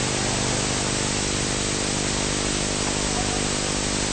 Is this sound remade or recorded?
recorded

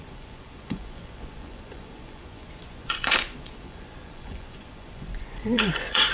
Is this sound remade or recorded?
remade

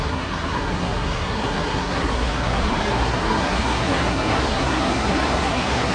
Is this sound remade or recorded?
remade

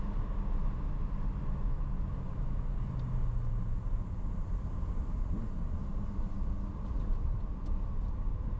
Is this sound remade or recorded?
recorded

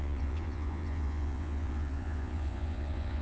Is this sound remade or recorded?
remade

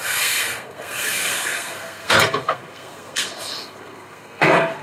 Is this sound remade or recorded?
remade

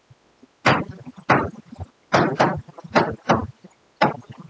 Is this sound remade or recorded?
recorded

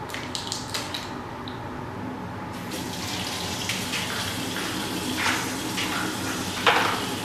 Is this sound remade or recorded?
recorded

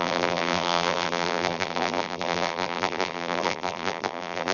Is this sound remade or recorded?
remade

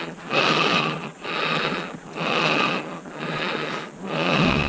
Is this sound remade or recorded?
remade